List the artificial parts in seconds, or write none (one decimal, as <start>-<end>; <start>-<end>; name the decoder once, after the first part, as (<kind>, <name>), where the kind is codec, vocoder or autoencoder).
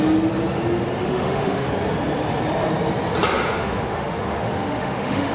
1.0-1.7 (autoencoder, DAC-VAE); 3.6-5.3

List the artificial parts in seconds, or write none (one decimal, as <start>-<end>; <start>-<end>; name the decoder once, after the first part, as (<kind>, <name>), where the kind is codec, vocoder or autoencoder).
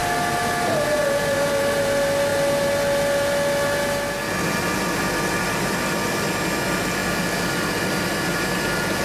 none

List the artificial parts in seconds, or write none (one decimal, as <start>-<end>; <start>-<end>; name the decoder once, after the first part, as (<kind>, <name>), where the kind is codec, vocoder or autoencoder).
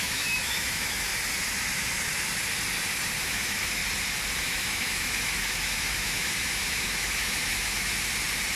0.0-1.1 (autoencoder, DAC-VAE); 3.2-3.8; 4.4-7.9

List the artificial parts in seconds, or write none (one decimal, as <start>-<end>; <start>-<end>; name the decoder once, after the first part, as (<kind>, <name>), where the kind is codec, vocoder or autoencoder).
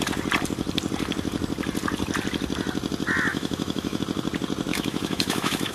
3.3-4.0 (autoencoder, DAC-VAE); 4.7-5.7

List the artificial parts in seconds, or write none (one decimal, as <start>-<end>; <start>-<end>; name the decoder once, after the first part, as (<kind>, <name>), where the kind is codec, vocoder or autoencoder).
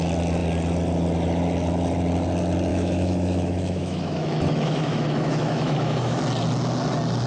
2.7-6.2 (autoencoder, DAC-VAE)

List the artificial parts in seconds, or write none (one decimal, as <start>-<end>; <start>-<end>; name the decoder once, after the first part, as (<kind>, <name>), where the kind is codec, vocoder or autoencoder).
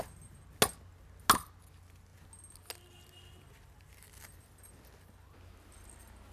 none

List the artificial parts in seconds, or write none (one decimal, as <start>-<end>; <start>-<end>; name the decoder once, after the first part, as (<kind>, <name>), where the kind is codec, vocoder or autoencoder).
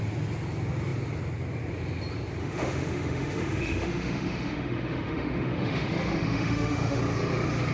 2.4-7.0 (autoencoder, DAC-VAE)